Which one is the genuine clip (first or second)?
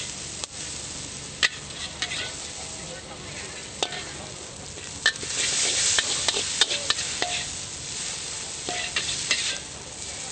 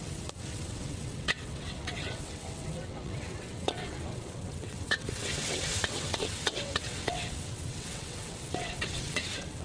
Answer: first